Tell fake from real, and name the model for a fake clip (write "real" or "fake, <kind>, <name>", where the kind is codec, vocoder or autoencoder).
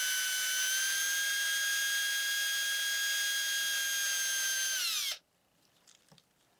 real